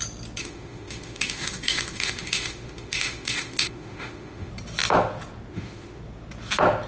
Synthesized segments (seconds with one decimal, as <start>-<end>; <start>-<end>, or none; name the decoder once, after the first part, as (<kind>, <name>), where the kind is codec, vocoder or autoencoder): 0.4-4.5 (autoencoder, DAC-VAE); 5.5-6.0